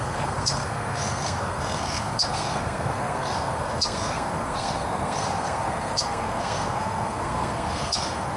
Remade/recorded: remade